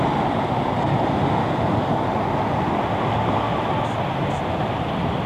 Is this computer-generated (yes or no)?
no